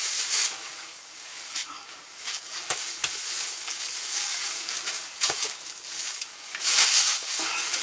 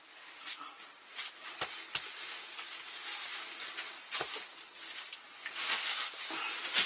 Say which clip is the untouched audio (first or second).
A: second